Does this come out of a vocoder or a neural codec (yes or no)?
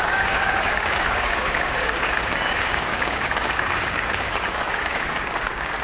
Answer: yes